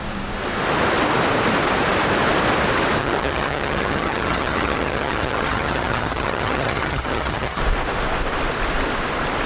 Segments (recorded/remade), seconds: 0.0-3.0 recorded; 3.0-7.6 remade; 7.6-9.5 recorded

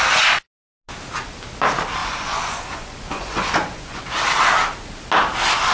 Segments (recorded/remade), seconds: 0.0-2.0 recorded; 2.0-4.0 remade; 4.0-5.7 recorded

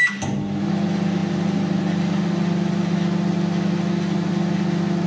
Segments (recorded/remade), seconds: 0.0-5.1 recorded